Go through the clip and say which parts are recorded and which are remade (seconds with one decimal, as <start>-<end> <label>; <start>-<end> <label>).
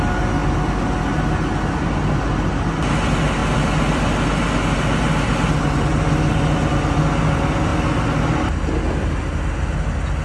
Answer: 0.0-10.2 recorded